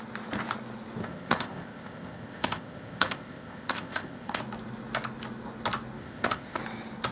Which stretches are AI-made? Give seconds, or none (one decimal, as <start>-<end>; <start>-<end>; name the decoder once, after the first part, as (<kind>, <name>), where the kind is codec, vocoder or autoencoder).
1.0-4.4 (codec, ZipCodec); 6.0-6.6